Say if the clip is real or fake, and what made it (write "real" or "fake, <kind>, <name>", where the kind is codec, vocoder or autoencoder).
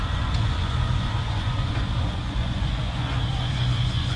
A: fake, vocoder, Vocos